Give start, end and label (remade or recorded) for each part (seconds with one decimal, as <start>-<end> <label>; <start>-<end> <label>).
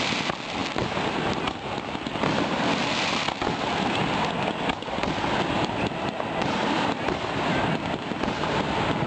0.0-9.1 recorded